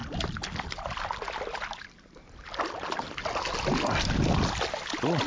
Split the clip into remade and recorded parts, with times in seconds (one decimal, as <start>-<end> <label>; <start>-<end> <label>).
0.0-5.3 recorded